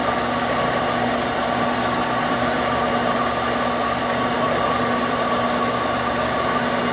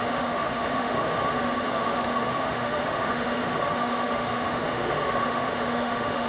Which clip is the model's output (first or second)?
second